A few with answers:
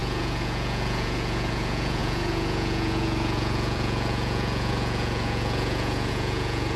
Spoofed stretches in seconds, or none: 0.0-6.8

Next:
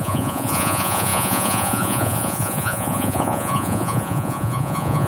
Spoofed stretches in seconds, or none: 0.0-5.1

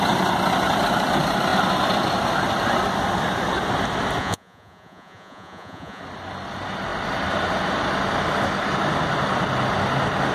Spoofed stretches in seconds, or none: 4.2-6.0

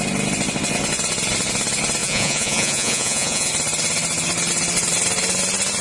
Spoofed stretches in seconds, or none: 2.0-3.5

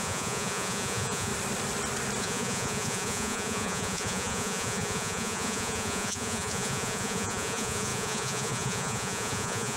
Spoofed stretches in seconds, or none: 0.0-1.3; 2.2-9.8

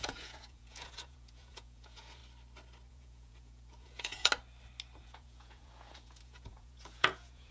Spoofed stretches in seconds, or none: 0.0-2.2; 2.9-4.3; 5.0-7.5